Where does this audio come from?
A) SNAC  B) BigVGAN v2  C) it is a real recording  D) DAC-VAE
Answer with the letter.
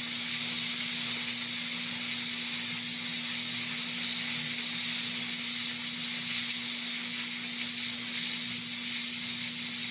C